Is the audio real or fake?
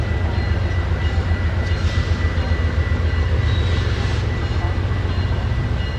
real